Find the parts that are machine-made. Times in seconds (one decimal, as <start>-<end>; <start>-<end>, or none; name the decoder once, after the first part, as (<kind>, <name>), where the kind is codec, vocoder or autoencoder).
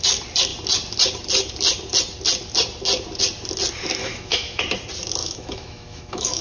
4.0-4.6 (autoencoder, DAC-VAE); 5.2-6.4